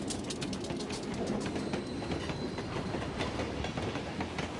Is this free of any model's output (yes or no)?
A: yes